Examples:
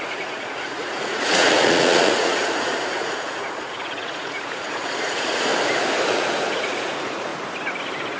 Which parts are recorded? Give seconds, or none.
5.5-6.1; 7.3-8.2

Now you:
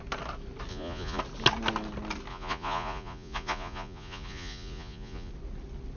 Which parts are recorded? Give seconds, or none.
0.0-0.7; 1.2-2.3; 5.3-6.0

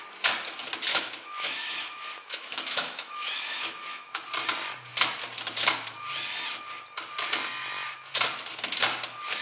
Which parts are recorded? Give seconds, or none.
0.0-0.9; 4.2-9.4

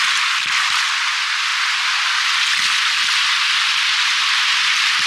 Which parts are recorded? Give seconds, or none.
0.0-5.1